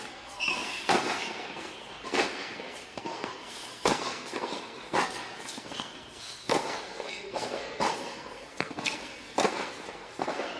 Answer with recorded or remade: remade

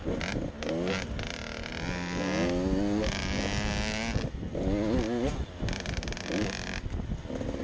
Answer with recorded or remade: recorded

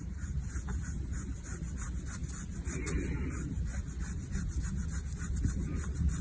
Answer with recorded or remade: recorded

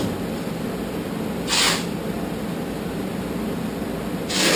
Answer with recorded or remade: recorded